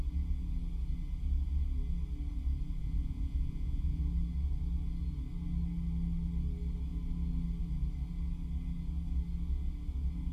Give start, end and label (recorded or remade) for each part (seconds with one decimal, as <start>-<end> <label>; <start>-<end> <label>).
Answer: 0.0-2.8 recorded; 2.8-4.0 remade; 4.0-10.3 recorded